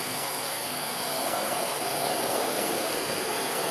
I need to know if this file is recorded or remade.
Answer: remade